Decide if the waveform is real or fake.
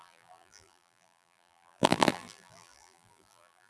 fake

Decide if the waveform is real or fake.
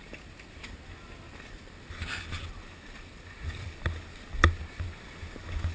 real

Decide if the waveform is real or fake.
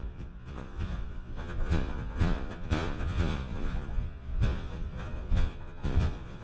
fake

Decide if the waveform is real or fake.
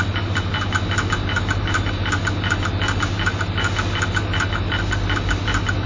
real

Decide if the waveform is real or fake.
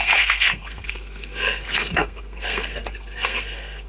fake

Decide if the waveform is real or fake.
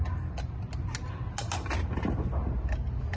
real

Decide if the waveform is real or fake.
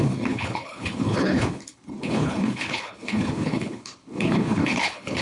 fake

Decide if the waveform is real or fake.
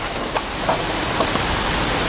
real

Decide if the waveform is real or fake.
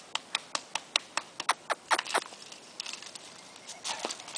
real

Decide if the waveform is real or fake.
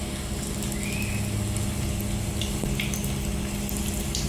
real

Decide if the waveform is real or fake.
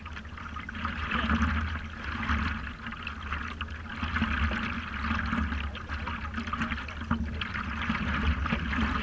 real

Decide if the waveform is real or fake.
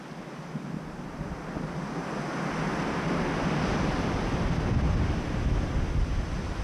real